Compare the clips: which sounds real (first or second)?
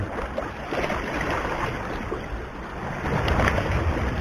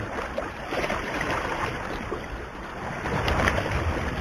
first